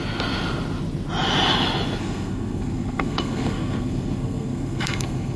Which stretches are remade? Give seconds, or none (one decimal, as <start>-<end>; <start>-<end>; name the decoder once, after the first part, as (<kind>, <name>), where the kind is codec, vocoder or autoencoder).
2.0-5.4 (codec, SNAC)